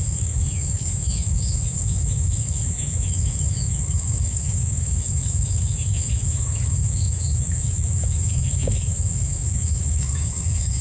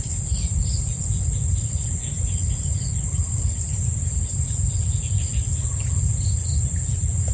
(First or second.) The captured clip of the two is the second